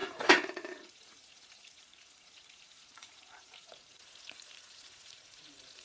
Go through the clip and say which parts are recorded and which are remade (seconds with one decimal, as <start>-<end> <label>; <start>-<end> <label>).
0.0-5.8 remade